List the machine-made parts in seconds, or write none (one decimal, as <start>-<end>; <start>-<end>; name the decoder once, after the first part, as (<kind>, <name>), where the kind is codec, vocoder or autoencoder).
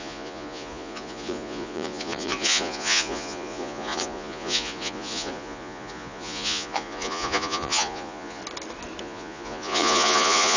0.0-8.4 (vocoder, Vocos); 9.0-10.6